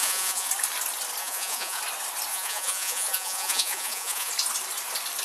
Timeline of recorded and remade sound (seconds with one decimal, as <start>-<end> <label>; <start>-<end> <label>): 0.0-0.5 remade; 0.5-1.2 recorded; 1.2-1.8 remade; 1.8-2.3 recorded; 2.3-4.3 remade; 4.3-5.2 recorded